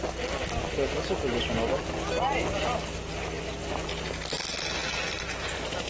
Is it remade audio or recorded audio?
recorded